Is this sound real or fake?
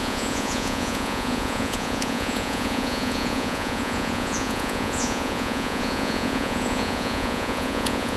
fake